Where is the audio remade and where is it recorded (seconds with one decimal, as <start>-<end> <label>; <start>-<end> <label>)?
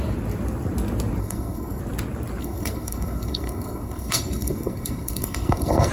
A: 0.0-1.2 recorded; 1.2-1.8 remade; 1.8-2.4 recorded; 2.4-5.9 remade